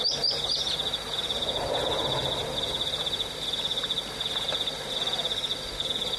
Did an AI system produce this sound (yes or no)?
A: no